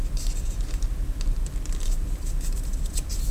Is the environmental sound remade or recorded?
remade